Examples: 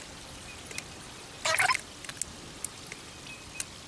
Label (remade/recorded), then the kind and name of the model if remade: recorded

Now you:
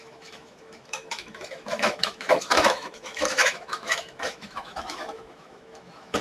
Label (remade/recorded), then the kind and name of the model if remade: remade, autoencoder, DAC-VAE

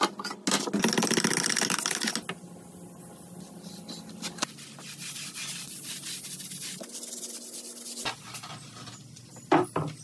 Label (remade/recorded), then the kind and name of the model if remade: recorded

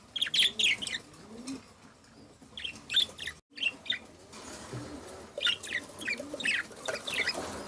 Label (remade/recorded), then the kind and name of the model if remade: recorded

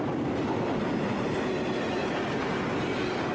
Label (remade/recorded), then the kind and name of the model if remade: recorded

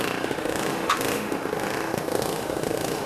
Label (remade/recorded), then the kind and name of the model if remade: remade, autoencoder, DAC-VAE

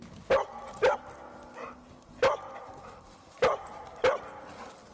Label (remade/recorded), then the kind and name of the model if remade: recorded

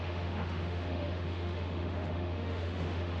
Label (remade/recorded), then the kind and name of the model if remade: remade, autoencoder, DAC-VAE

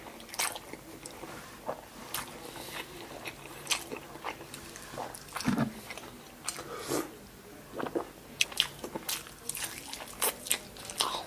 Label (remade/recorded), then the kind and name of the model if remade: recorded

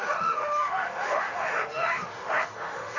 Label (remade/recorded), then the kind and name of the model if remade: remade, autoencoder, DAC-VAE